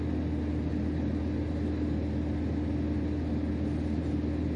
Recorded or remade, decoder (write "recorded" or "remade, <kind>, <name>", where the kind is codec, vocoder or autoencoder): recorded